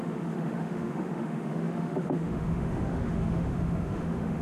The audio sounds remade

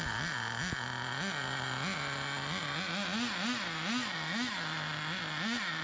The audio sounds recorded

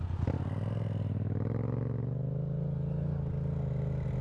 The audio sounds recorded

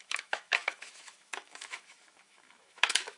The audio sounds remade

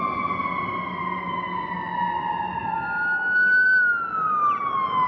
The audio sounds recorded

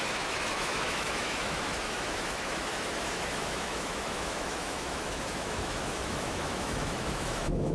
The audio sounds remade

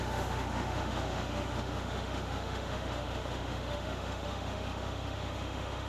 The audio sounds remade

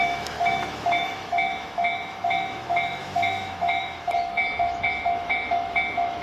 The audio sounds remade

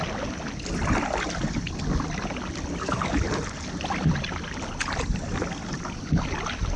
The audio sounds recorded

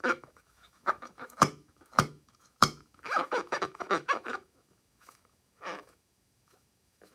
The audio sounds remade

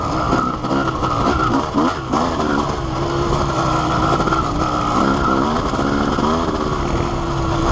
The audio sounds recorded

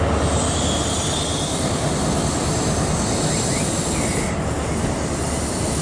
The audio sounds recorded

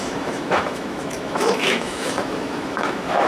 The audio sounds remade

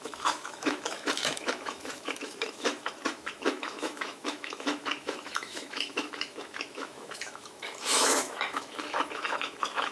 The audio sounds remade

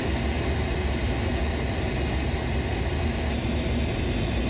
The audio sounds recorded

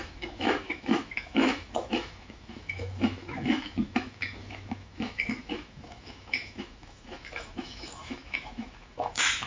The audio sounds remade